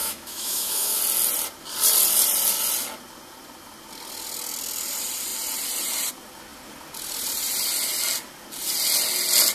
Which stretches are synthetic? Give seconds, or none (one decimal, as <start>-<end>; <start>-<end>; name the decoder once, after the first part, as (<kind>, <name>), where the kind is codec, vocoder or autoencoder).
0.0-1.0 (autoencoder, DAC-VAE)